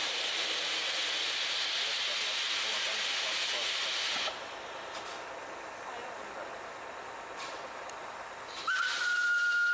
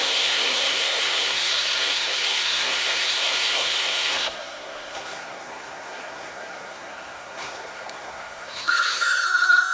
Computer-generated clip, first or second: second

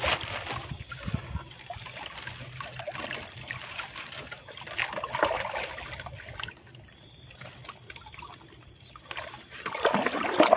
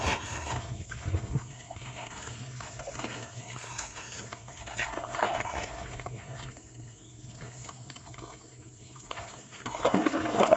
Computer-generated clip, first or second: second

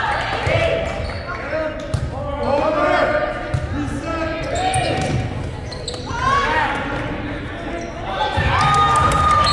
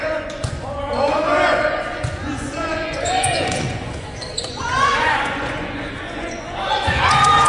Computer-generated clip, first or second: second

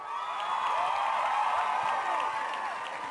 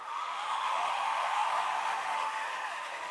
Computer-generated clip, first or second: second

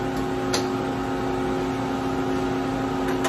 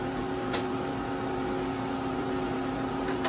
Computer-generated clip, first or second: second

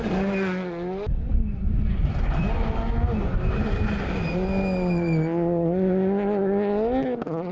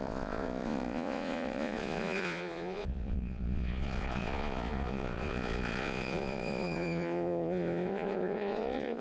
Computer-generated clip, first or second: second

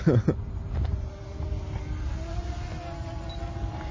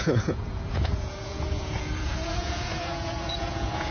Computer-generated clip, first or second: second